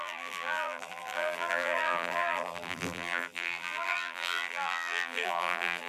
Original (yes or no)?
no